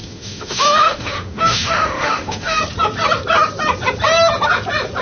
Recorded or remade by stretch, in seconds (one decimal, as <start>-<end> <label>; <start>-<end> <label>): 0.0-2.6 remade; 2.6-5.0 recorded